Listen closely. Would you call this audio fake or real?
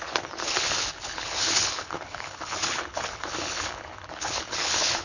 fake